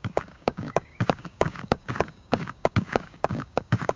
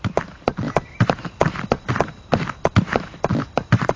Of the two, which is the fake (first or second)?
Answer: first